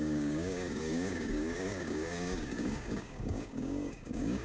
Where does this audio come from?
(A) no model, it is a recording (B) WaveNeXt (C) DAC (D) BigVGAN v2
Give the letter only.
C